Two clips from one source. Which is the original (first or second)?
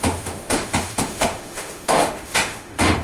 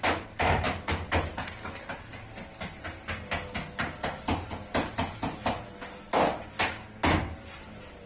second